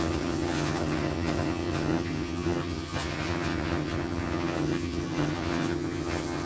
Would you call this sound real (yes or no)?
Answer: no